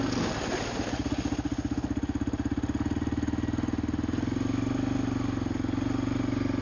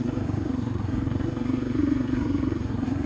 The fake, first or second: second